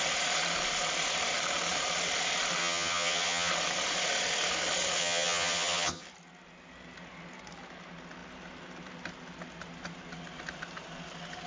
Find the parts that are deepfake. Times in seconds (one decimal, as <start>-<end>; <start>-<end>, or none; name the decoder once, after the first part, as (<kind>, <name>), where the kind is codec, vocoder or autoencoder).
2.6-3.5 (vocoder, HiFi-GAN); 5.0-6.0